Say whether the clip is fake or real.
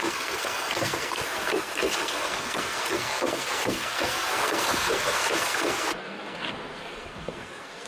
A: fake